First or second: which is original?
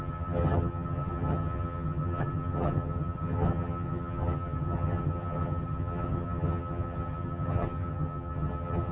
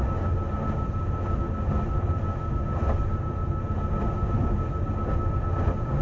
second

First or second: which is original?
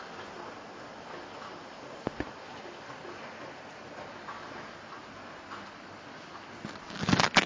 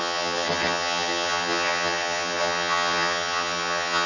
first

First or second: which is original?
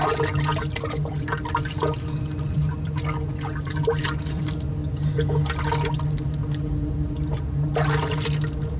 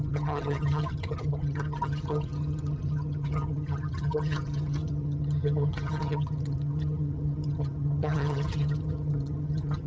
first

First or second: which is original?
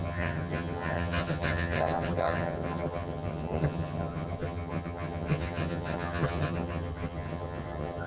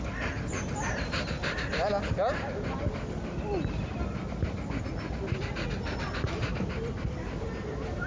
second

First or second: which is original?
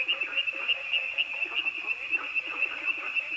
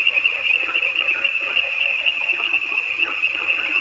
first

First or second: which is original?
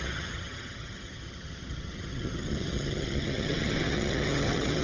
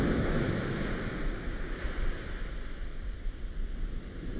second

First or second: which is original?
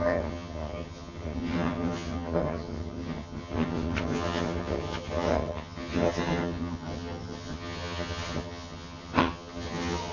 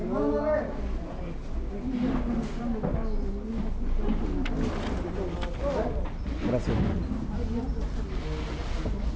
second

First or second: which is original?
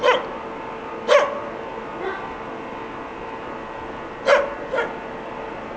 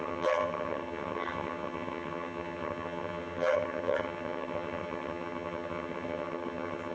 first